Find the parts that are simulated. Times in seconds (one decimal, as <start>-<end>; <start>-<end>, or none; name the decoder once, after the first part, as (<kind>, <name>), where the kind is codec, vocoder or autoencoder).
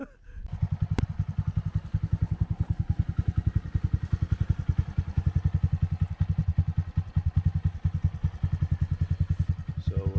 none